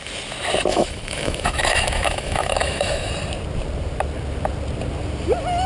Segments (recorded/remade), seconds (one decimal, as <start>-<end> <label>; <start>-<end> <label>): 0.0-0.7 recorded; 0.7-3.1 remade; 3.1-5.7 recorded